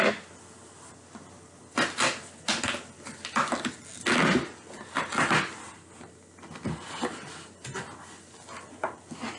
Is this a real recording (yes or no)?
yes